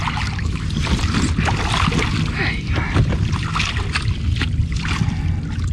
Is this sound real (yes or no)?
yes